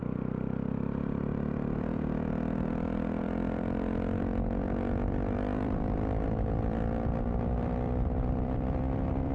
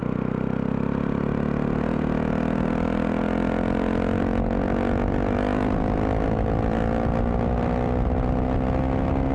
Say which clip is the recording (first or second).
second